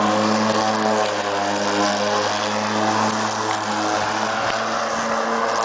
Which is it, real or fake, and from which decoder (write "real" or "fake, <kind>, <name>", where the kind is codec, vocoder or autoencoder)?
real